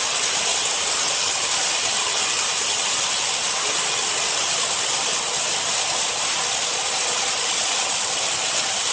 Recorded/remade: recorded